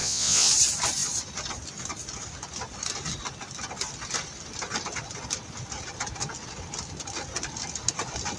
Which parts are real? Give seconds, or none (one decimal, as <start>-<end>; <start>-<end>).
0.5-8.4